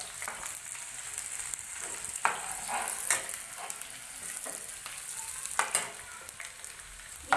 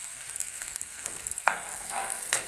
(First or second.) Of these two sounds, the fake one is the second